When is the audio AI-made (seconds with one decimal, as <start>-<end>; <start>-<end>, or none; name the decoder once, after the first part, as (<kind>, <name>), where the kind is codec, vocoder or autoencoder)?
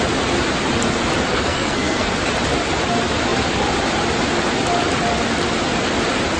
1.3-2.1 (codec, SNAC)